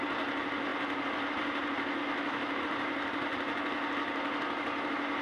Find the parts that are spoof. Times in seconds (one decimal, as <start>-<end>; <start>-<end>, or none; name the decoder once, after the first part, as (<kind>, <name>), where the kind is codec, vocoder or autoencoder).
2.0-2.6 (autoencoder, DAC-VAE)